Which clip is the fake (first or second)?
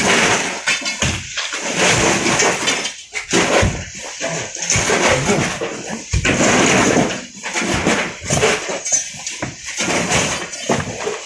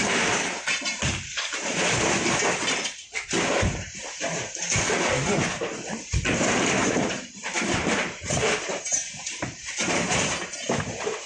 second